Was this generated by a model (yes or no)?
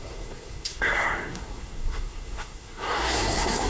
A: yes